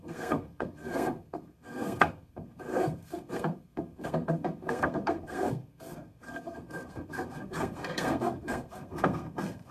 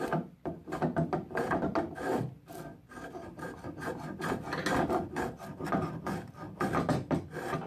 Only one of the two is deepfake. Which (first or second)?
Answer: first